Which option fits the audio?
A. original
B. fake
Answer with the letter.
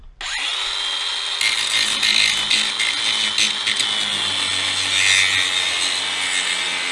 A